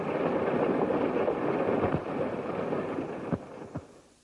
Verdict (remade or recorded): remade